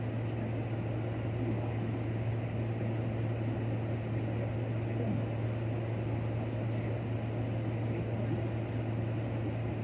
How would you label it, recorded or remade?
recorded